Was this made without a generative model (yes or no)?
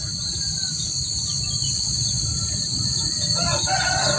yes